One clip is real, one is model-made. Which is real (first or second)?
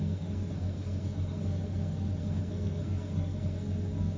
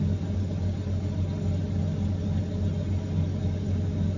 second